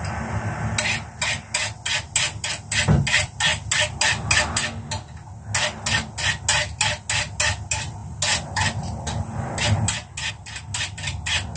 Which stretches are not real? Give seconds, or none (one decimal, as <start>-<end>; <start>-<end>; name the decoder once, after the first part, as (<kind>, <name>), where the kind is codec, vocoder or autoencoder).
none